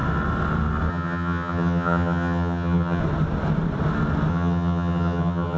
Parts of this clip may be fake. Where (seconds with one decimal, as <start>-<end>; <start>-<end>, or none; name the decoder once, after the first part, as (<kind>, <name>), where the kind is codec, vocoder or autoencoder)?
0.9-3.0 (vocoder, HiFi-GAN); 4.3-5.6